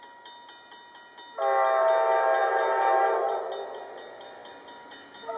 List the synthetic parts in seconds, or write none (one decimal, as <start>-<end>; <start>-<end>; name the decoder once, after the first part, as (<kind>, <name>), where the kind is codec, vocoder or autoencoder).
none